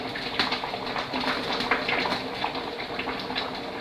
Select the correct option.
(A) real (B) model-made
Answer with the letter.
B